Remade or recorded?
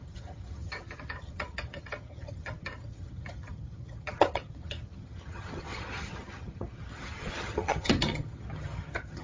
remade